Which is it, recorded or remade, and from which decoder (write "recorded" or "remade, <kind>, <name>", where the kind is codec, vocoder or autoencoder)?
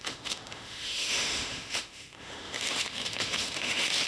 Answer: remade, autoencoder, DAC-VAE